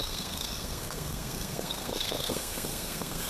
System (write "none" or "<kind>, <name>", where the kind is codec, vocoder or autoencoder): codec, SNAC